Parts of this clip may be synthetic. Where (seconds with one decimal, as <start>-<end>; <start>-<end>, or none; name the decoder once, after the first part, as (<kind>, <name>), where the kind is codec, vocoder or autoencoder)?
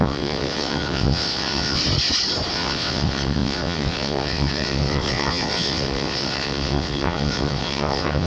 0.0-1.8 (vocoder, WaveNeXt); 2.5-8.3